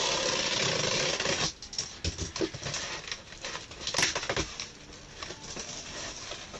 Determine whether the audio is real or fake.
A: real